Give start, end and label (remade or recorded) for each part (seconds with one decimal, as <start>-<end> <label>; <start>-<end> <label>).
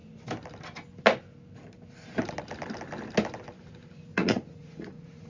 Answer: 0.0-4.1 recorded; 4.1-5.3 remade